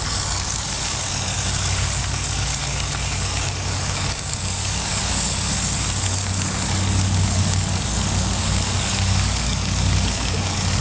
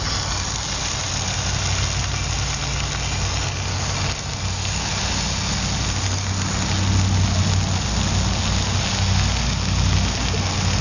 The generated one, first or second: first